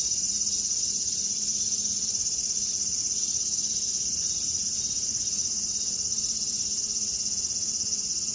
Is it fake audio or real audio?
fake